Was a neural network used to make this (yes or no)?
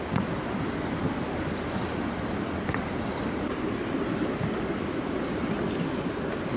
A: no